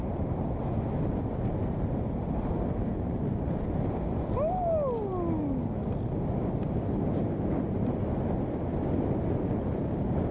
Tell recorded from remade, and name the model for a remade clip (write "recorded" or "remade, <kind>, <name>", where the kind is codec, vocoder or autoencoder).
recorded